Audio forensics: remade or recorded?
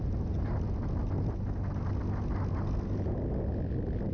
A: recorded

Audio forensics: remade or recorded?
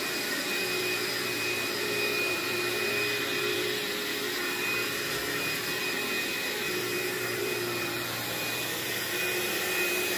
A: remade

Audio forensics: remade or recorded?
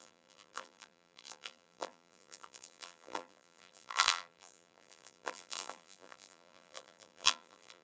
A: remade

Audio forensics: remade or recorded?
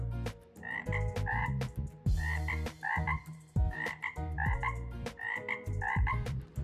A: remade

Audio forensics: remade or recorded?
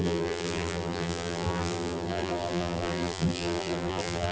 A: remade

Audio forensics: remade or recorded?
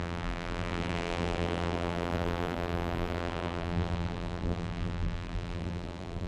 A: remade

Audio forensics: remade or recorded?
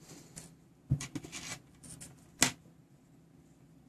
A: recorded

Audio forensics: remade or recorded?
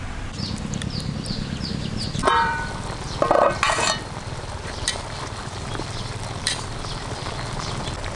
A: remade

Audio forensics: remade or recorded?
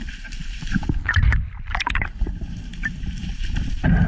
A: remade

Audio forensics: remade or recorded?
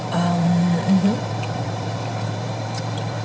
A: remade